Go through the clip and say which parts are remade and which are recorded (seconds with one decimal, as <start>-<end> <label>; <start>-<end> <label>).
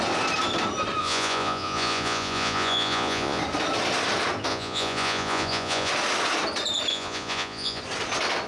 0.0-1.0 recorded; 1.0-3.4 remade; 3.4-4.5 recorded; 4.5-5.9 remade; 5.9-6.9 recorded; 6.9-7.8 remade; 7.8-8.5 recorded